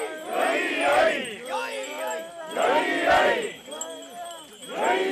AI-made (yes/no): no